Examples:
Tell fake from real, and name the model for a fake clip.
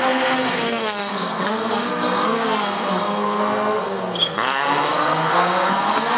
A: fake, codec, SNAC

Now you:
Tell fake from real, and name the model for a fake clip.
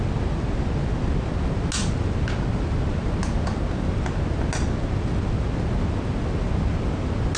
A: real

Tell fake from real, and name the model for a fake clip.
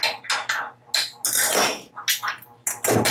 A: real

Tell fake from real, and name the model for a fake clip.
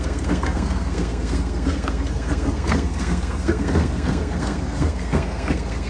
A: fake, codec, SNAC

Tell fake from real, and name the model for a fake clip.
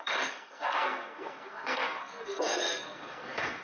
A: fake, codec, SNAC